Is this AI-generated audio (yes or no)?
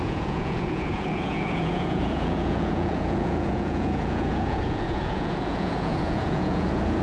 yes